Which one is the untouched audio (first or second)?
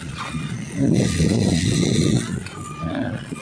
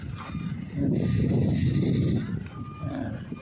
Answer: second